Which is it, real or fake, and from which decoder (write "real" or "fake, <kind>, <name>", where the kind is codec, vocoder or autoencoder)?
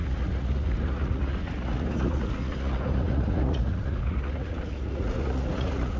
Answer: fake, vocoder, Vocos